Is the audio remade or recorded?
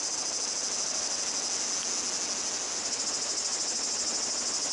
recorded